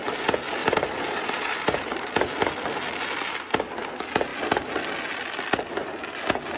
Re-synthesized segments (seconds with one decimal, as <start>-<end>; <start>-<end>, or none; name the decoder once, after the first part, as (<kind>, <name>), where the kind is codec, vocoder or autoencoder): 0.6-2.1 (vocoder, BigVGAN v2)